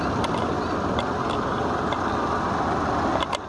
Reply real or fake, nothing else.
real